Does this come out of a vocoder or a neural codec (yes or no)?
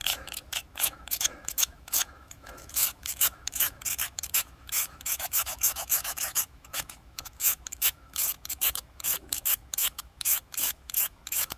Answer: yes